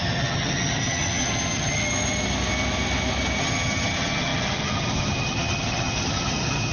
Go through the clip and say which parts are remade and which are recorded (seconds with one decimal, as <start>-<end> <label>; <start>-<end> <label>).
0.0-1.9 remade; 1.9-3.4 recorded; 3.4-6.7 remade